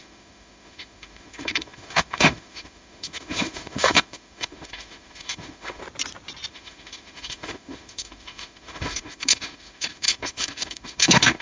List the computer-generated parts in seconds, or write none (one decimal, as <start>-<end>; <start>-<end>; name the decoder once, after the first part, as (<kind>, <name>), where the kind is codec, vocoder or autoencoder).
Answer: 0.0-5.8 (autoencoder, DAC-VAE); 6.5-11.4